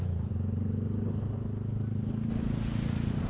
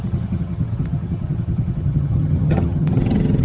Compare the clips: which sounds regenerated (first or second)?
second